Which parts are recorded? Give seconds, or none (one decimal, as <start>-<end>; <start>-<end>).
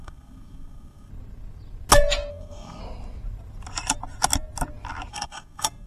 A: 1.1-2.3; 2.8-5.1